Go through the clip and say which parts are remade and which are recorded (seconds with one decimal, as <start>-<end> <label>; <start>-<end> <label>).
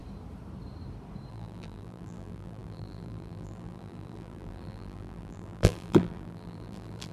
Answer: 0.0-1.3 recorded; 1.3-7.1 remade